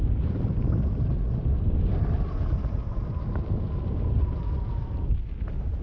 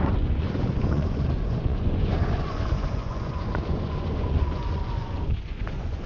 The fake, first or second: second